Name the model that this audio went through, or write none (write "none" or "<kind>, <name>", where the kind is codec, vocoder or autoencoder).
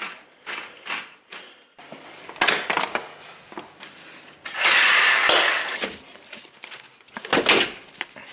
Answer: none